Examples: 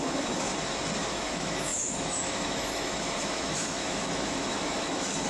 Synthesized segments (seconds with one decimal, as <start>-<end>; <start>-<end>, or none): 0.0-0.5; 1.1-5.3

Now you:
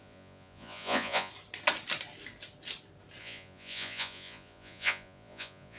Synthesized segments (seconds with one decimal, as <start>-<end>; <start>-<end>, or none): 0.0-1.3; 3.2-5.8

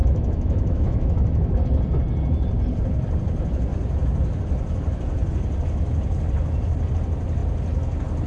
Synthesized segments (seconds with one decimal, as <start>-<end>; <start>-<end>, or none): 0.0-1.5

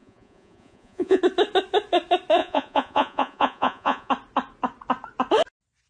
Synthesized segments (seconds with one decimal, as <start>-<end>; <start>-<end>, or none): 0.0-1.2; 2.4-4.1

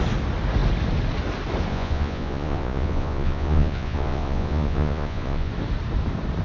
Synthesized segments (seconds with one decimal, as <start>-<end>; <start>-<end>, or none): 1.7-5.5

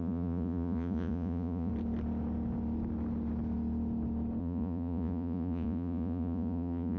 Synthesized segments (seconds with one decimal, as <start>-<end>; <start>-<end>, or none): 0.0-1.7; 4.4-7.0

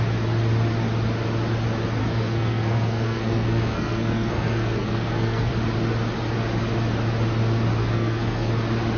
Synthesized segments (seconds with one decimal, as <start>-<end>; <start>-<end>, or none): 2.0-5.5; 7.8-8.5